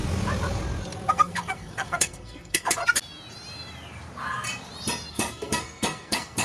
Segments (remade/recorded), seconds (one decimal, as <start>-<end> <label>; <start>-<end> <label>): 0.0-1.1 recorded; 1.1-2.8 remade; 2.8-5.1 recorded; 5.1-6.4 remade